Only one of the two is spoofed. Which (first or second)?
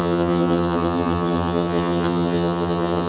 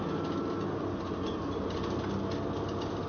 first